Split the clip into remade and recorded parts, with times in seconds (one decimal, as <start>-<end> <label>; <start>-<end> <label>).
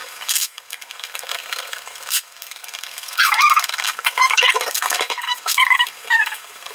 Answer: 0.0-6.7 remade